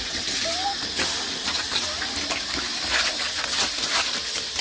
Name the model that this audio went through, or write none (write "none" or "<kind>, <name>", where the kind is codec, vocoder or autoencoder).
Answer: vocoder, BigVGAN v2